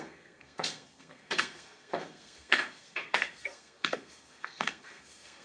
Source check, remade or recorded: remade